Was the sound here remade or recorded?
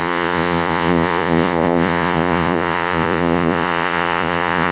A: remade